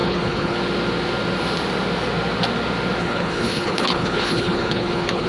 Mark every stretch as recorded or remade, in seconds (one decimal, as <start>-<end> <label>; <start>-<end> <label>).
0.0-0.6 remade; 0.6-3.0 recorded; 3.0-5.3 remade